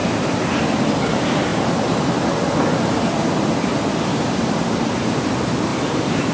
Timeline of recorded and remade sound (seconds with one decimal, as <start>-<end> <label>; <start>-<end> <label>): 0.0-0.9 remade; 0.9-1.5 recorded; 1.5-5.3 remade; 5.3-5.7 recorded; 5.7-6.3 remade